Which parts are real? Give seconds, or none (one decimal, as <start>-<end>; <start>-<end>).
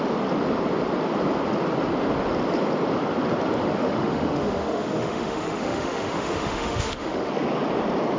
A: 0.0-3.6; 7.3-8.2